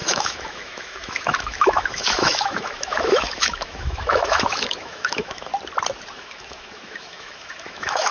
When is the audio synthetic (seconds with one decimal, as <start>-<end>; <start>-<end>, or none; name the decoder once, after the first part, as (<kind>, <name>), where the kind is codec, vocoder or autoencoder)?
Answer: 0.0-5.5 (autoencoder, DAC-VAE); 6.1-8.1